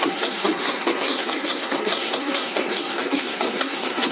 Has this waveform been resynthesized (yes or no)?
yes